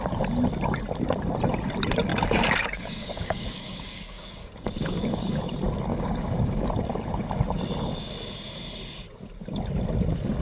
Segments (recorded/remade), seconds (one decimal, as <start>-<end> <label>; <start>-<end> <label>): 0.0-2.1 recorded; 2.1-5.4 remade; 5.4-5.9 recorded; 5.9-6.7 remade; 6.7-10.4 recorded